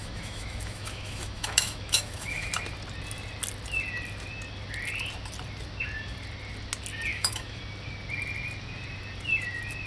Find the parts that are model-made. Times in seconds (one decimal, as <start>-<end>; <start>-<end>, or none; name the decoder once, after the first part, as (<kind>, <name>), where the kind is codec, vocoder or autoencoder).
0.0-2.5 (autoencoder, DAC-VAE); 7.1-7.6